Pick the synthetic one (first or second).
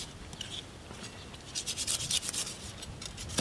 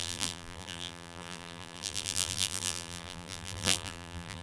second